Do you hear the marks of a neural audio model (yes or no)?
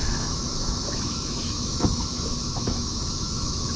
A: yes